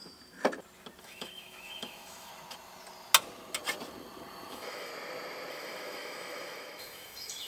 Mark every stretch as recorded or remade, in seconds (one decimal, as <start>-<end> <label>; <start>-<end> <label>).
0.0-1.0 recorded; 1.0-2.3 remade; 2.3-4.5 recorded; 4.5-4.9 remade; 4.9-5.5 recorded; 5.5-7.5 remade